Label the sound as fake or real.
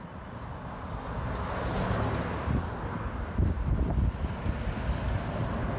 real